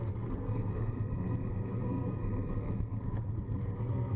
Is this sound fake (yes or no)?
yes